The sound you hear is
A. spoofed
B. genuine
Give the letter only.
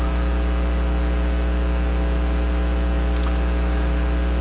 B